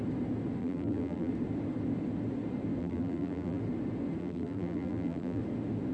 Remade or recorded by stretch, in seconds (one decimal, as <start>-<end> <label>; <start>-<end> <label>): 0.0-0.6 recorded; 0.6-1.3 remade; 1.3-2.8 recorded; 2.8-3.6 remade; 3.6-4.2 recorded; 4.2-5.4 remade; 5.4-5.9 recorded